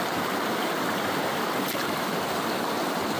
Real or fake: real